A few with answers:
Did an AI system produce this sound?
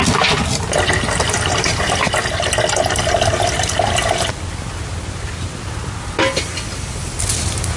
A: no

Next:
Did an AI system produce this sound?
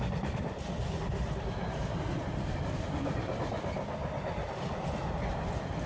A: no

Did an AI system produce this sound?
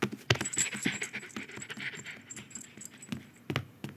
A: no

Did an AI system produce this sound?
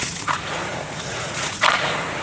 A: yes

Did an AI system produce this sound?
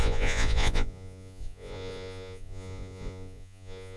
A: yes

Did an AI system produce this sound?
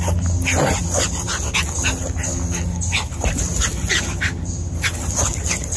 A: no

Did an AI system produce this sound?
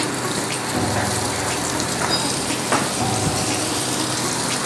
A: yes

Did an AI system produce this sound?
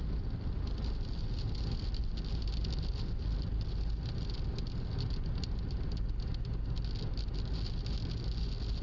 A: no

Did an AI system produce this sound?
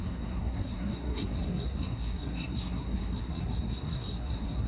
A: yes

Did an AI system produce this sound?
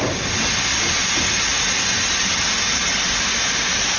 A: no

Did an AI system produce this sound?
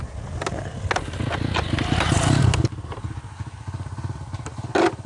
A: no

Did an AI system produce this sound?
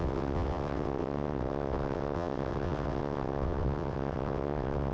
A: yes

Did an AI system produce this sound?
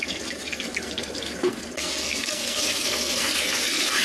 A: yes